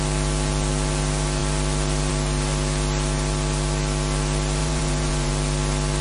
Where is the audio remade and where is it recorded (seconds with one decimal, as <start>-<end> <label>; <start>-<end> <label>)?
0.0-4.6 recorded; 4.6-5.3 remade; 5.3-6.0 recorded